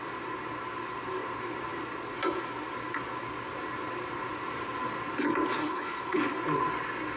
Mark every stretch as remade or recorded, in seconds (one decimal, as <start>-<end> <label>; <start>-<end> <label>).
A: 0.0-5.6 recorded; 5.6-6.2 remade; 6.2-7.2 recorded